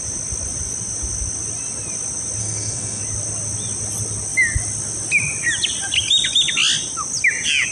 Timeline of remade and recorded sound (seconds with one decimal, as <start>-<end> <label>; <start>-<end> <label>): 0.0-2.4 recorded; 2.4-3.0 remade; 3.0-7.7 recorded